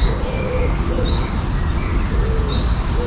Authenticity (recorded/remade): recorded